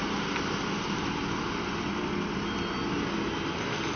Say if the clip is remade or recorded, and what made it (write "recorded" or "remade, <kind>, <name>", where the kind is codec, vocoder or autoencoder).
recorded